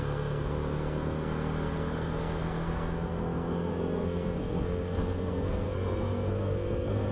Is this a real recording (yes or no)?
no